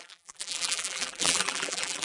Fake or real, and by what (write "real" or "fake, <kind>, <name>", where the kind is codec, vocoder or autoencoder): fake, vocoder, BigVGAN v2